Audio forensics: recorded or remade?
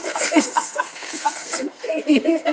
remade